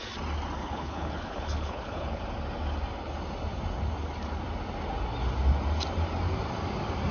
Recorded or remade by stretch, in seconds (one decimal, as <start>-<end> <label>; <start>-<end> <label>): 0.0-0.6 recorded; 0.6-2.2 remade; 2.2-7.1 recorded